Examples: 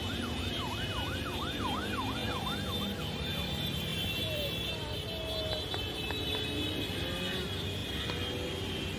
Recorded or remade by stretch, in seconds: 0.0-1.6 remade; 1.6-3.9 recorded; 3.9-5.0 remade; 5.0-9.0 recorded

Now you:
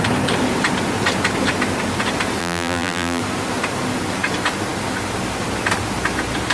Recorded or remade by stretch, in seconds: 0.0-2.4 recorded; 2.4-3.2 remade; 3.2-6.5 recorded

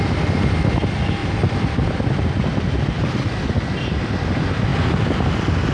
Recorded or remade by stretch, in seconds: 0.0-1.2 recorded; 1.2-4.1 remade; 4.1-5.7 recorded